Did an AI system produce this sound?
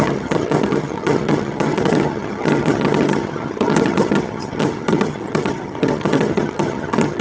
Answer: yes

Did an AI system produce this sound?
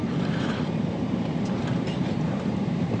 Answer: yes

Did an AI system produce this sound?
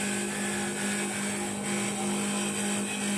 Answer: no